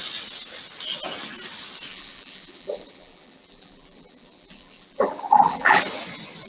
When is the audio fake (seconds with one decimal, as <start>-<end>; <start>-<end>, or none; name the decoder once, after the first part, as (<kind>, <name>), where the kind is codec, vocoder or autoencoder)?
1.9-5.8 (vocoder, BigVGAN v2)